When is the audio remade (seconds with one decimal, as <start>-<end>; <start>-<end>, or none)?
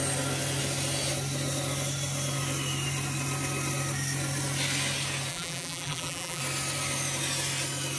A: 5.3-6.4